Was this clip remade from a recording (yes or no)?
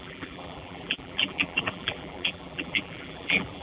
yes